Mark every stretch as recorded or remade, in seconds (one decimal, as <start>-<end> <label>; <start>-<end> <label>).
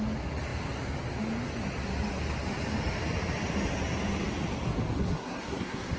0.0-5.0 recorded; 5.0-6.0 remade